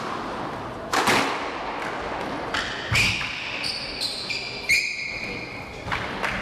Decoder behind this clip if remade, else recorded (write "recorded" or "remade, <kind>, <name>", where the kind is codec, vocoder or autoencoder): recorded